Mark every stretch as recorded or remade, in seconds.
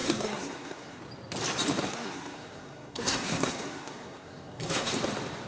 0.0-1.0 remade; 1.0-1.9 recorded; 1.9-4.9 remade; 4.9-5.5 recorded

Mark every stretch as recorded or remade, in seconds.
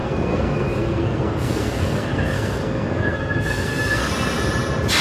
0.0-4.1 remade; 4.1-5.0 recorded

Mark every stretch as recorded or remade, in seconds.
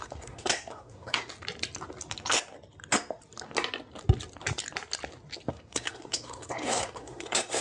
0.0-1.3 remade; 1.3-5.5 recorded; 5.5-7.6 remade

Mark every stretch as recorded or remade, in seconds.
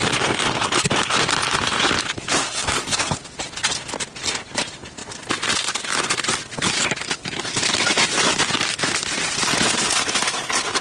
0.0-2.4 recorded; 2.4-3.2 remade; 3.2-10.8 recorded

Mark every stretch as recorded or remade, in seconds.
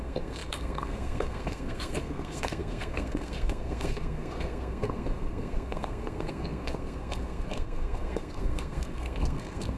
0.0-9.8 remade